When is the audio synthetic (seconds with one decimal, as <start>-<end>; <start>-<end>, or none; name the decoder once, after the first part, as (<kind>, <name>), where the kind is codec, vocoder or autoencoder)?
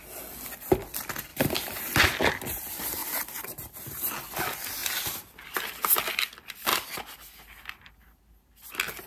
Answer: 1.3-2.0 (vocoder, BigVGAN v2); 3.0-3.8